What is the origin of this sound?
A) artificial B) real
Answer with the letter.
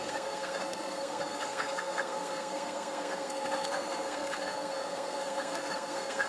A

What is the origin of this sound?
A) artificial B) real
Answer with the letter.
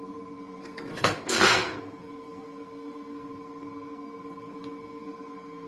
A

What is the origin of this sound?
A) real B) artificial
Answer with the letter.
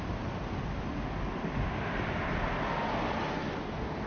A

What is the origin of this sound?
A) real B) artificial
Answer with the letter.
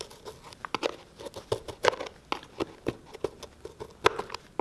A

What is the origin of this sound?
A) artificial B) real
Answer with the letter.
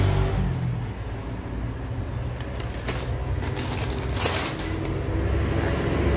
B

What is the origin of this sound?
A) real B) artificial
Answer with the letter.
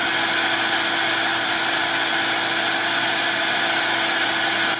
A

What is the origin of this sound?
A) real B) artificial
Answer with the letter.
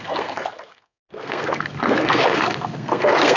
B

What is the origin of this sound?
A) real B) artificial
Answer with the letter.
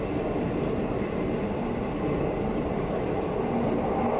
A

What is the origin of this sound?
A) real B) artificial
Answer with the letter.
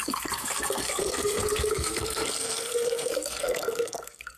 B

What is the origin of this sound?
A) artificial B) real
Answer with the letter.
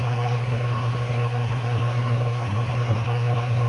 A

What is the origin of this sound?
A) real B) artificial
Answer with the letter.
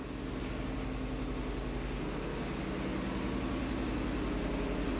A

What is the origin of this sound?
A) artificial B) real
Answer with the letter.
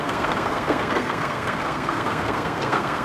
A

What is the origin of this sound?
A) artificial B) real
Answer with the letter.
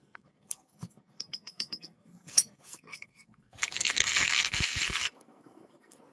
A